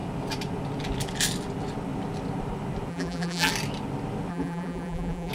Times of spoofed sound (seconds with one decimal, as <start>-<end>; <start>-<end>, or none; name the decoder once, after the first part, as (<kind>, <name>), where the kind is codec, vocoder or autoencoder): 2.9-3.5 (vocoder, BigVGAN v2); 4.3-5.3